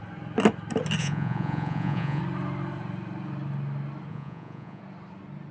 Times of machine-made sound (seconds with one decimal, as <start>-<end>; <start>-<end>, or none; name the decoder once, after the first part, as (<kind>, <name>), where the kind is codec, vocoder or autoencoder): 1.0-2.2 (vocoder, Vocos); 4.1-4.8

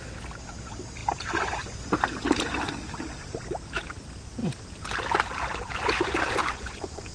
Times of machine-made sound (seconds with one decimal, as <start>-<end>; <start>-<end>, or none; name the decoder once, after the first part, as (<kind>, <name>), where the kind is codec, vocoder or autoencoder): 6.4-7.1 (vocoder, Vocos)

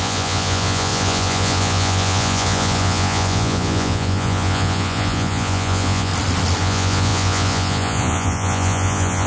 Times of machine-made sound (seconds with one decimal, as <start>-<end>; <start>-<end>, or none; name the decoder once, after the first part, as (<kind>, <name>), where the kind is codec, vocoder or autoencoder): 0.0-6.1 (vocoder, Vocos); 6.6-9.3

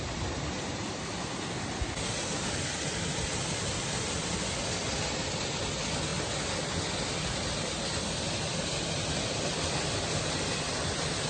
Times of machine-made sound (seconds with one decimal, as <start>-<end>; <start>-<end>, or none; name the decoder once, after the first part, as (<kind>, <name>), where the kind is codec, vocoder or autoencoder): none

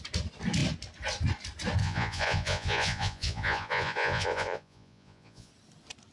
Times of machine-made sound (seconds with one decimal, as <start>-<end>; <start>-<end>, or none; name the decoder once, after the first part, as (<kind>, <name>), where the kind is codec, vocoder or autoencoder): 1.8-5.5 (vocoder, Vocos)

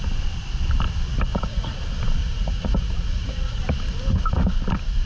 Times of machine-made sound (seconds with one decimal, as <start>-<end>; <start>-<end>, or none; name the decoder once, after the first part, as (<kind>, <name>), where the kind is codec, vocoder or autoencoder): 1.3-1.8 (vocoder, Vocos); 2.2-3.6